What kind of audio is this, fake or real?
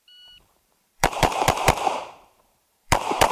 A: fake